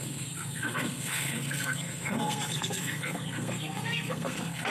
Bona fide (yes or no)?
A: no